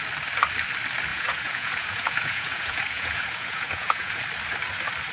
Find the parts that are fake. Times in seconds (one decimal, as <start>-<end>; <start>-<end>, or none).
1.1-4.2